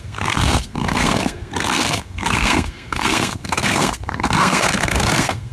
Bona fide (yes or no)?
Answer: no